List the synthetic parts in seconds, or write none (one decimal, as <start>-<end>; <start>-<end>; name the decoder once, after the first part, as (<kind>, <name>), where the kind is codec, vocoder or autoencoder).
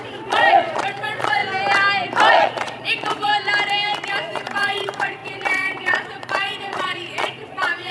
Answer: 0.0-1.4 (vocoder, Vocos); 2.3-3.3; 4.1-7.9